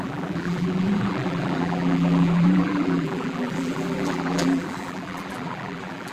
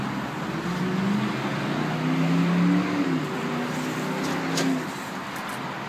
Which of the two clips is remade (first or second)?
first